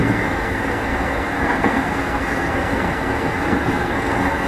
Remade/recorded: remade